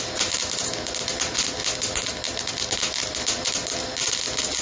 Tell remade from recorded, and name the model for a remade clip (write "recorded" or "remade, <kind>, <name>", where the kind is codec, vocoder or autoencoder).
recorded